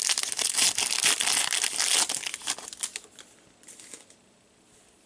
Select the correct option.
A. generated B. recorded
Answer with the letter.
B